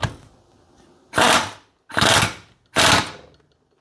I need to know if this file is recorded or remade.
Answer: recorded